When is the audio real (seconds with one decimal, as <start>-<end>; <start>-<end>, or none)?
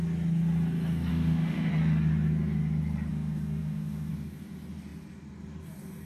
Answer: 0.0-1.1; 1.7-3.1; 4.1-6.1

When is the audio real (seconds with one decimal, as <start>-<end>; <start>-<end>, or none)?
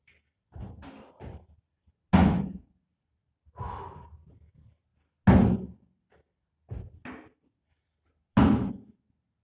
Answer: 0.0-9.4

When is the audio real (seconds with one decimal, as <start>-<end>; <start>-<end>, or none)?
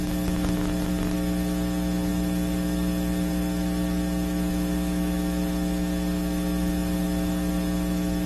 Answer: 0.0-8.3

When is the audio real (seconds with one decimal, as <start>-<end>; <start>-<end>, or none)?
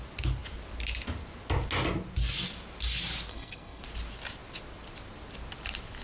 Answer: 0.0-3.3; 3.8-6.0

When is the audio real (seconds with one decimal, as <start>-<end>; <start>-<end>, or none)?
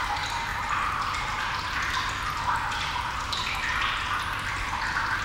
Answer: 0.5-1.0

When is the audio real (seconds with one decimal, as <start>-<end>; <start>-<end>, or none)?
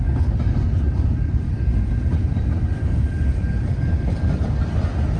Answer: 0.0-2.3; 3.0-5.2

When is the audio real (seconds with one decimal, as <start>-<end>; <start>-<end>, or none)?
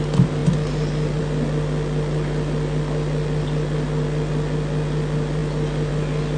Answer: 0.0-6.4